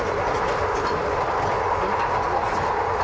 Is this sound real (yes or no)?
yes